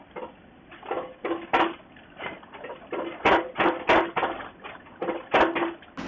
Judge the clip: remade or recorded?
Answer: recorded